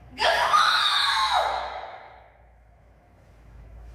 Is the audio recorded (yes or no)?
no